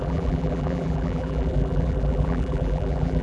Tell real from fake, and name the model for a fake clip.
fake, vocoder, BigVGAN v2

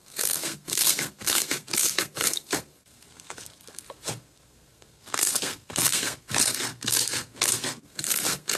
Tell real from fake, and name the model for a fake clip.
fake, codec, SNAC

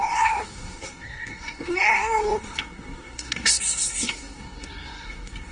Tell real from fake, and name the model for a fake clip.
fake, codec, SNAC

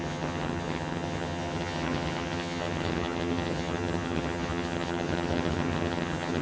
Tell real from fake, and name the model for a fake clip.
fake, vocoder, HiFi-GAN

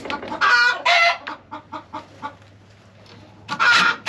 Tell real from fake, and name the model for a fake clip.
real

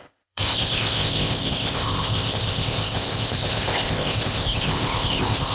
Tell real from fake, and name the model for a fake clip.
fake, codec, ZipCodec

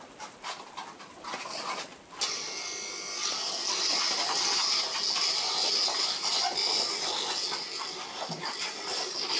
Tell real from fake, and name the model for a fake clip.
real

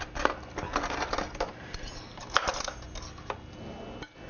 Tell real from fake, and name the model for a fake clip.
real